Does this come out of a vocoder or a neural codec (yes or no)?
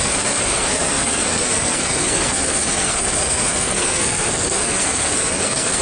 yes